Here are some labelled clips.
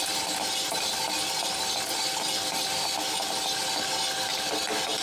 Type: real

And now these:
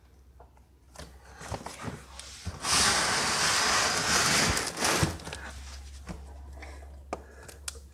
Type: real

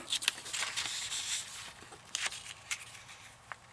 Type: real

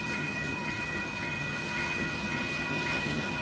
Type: fake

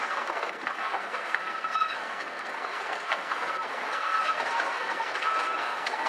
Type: fake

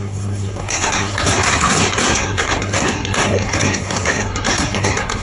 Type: fake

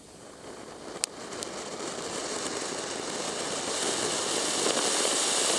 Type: real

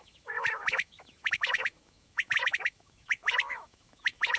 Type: fake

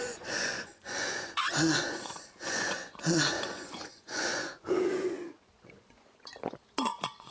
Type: fake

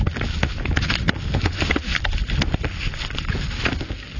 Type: real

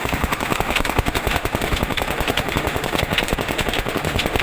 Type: fake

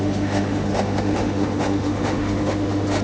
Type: fake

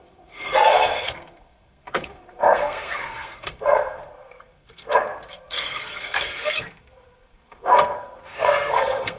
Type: fake